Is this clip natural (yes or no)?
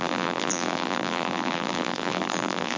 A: no